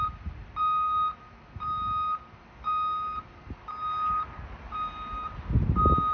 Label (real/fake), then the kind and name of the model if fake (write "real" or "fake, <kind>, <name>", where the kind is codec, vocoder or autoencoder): real